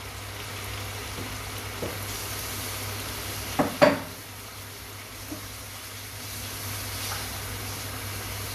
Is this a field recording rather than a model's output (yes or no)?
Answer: yes